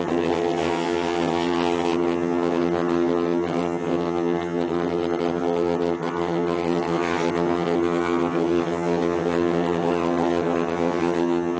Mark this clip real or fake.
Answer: fake